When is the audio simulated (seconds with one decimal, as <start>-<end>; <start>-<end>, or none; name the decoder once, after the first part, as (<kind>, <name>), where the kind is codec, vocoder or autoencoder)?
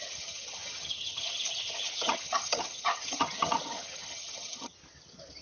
0.0-4.8 (vocoder, HiFi-GAN)